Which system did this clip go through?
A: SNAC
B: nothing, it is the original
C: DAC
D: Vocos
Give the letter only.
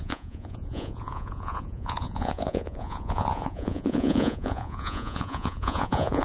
D